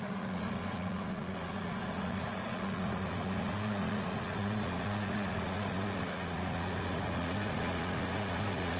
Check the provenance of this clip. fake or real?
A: fake